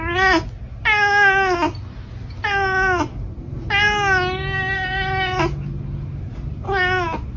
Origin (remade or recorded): recorded